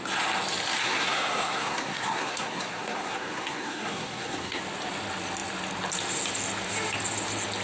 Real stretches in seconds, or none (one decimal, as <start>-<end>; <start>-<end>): 0.0-0.8; 4.6-7.6

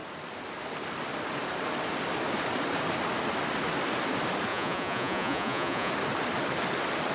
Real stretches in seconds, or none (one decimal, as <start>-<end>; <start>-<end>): 0.0-4.5; 5.9-7.1

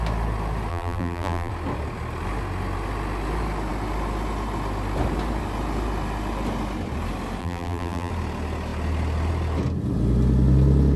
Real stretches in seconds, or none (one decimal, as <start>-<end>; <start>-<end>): 0.0-0.7; 1.5-7.4; 8.1-11.0

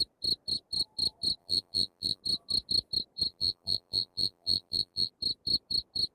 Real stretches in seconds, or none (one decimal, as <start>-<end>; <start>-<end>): 0.0-1.4; 2.2-3.3; 5.1-6.1

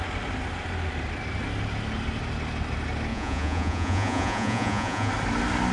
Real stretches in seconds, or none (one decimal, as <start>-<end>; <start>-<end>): 0.0-3.1; 5.1-5.7

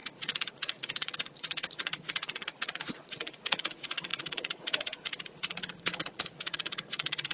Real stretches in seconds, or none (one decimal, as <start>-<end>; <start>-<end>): none

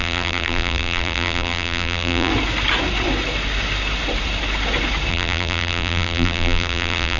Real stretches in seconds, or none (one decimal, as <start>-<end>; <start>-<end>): 2.3-5.1

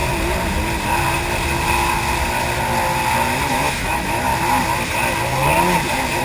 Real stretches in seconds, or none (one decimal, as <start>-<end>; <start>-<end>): 0.0-3.5; 4.3-6.2